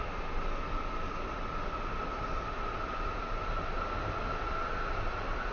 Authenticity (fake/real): real